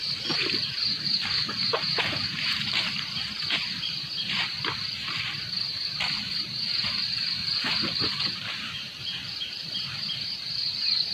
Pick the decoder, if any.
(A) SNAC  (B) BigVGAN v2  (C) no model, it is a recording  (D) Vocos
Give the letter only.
B